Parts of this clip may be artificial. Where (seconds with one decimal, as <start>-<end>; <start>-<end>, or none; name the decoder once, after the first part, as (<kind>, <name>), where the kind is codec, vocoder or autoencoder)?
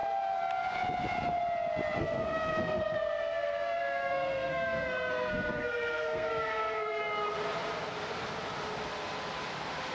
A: 2.0-7.0 (codec, SNAC)